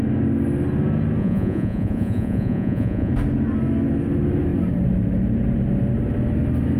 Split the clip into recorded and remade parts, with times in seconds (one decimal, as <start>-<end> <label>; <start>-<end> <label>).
0.0-1.2 recorded; 1.2-3.1 remade; 3.1-6.8 recorded